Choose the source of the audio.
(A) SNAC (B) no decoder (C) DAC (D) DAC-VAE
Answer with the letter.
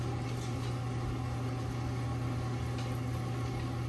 B